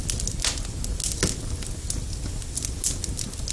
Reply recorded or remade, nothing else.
recorded